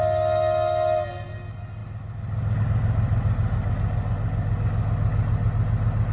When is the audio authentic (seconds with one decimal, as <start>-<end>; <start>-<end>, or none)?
0.0-6.1